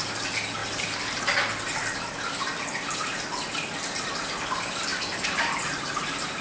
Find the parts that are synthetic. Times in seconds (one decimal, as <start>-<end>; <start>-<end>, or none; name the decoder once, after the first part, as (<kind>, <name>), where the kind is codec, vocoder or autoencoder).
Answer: 0.6-1.2 (vocoder, BigVGAN v2); 4.9-6.4